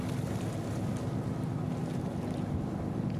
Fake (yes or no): no